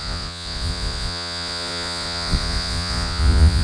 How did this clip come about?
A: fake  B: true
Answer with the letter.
A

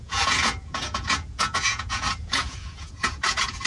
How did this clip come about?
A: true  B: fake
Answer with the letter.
B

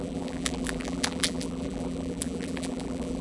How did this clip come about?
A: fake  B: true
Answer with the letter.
A